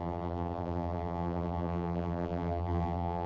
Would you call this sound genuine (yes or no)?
no